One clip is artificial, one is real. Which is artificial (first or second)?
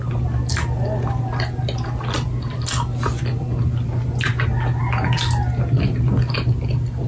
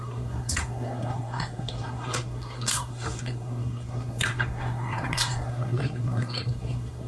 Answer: second